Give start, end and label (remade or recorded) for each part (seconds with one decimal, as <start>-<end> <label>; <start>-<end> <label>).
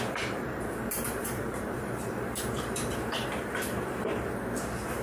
0.0-5.0 remade